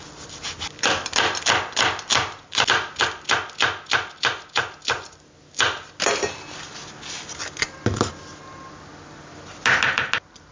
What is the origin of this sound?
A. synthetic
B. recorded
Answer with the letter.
B